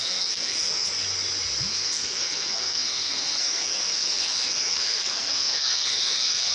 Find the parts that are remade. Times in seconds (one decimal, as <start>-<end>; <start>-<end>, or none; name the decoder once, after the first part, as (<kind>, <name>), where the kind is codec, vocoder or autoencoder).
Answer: 0.0-0.9 (codec, SNAC); 1.7-6.5